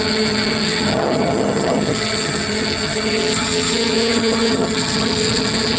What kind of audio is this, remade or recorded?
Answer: remade